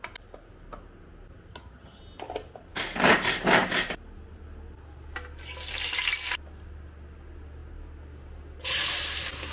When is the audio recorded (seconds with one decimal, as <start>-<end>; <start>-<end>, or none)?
0.0-1.5; 2.0-9.5